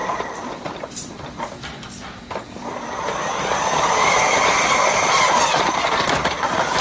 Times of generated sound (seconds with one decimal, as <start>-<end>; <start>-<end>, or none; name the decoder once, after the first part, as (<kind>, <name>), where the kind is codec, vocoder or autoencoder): 0.0-6.8 (vocoder, BigVGAN v2)